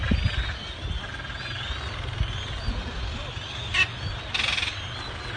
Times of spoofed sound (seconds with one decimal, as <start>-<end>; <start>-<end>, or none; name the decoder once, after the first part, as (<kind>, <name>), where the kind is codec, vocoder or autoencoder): none